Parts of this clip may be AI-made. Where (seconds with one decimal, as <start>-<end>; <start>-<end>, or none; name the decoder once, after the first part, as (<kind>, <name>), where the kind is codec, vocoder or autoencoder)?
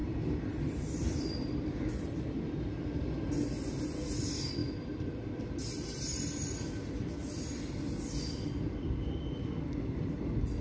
0.0-2.2 (vocoder, BigVGAN v2)